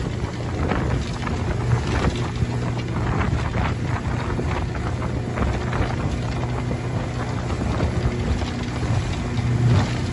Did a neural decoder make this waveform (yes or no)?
no